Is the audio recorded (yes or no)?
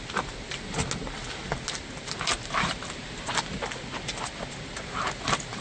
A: yes